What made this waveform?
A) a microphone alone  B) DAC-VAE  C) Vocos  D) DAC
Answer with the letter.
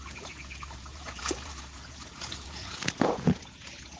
C